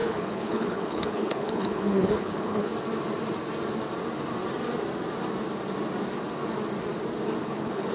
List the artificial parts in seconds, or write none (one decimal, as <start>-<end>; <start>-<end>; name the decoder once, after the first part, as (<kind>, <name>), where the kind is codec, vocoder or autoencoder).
0.0-2.7 (codec, HILCodec); 7.4-7.9